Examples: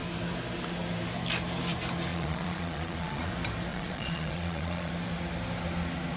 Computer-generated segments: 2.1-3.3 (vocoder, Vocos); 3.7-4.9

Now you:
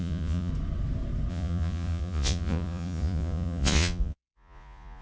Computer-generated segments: 0.0-0.5 (vocoder, Vocos); 1.3-5.0